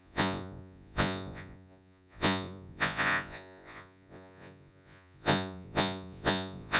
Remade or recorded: remade